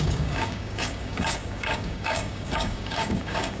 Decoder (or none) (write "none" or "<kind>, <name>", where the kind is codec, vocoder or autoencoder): codec, DAC